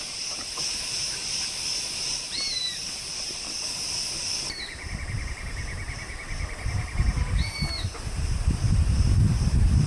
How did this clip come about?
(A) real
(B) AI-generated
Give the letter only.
B